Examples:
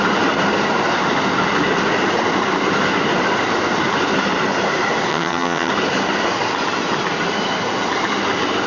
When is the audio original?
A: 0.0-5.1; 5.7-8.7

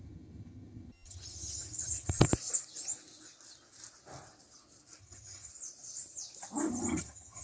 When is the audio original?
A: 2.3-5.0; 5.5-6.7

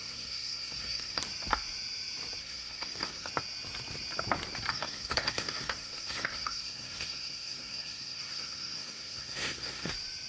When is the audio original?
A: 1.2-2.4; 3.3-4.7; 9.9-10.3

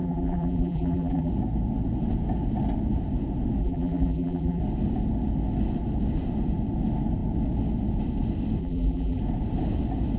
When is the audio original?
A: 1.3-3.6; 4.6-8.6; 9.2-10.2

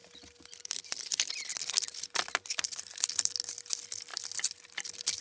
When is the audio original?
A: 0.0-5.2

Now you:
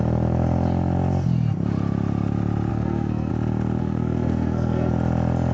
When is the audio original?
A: 0.0-2.7; 3.3-3.8; 4.9-5.5

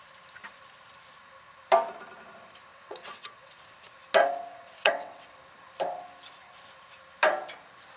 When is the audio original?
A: 0.0-2.7; 3.6-4.5; 5.4-8.0

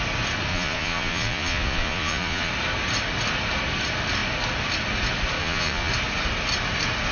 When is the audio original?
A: 0.0-0.5; 2.5-5.4; 5.9-7.1